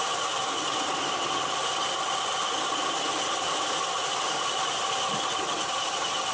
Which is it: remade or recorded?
recorded